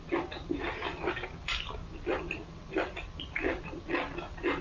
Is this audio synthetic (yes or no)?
no